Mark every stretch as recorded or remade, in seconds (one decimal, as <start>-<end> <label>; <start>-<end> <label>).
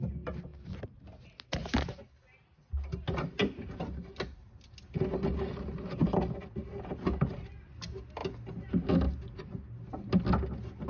0.0-10.9 recorded